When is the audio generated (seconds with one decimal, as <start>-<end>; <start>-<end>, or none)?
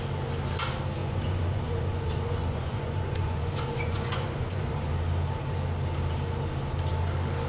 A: 1.0-4.9